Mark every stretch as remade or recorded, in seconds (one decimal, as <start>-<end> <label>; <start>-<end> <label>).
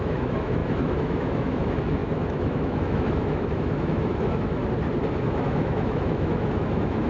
0.0-4.6 remade; 4.6-5.2 recorded; 5.2-7.1 remade